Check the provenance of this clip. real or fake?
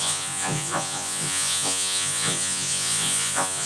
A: fake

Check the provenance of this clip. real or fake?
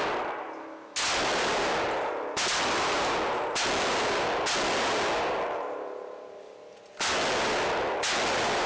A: real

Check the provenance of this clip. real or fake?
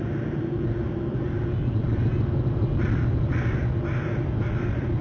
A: real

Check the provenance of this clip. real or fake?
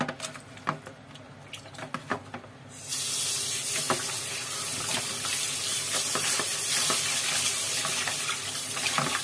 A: real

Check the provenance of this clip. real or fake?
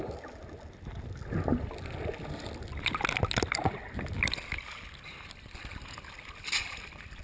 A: real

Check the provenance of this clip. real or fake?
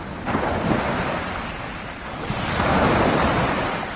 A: real